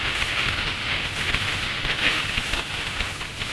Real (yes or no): no